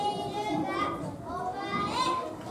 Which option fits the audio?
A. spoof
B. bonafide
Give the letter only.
B